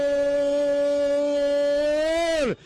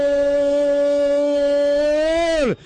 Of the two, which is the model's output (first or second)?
second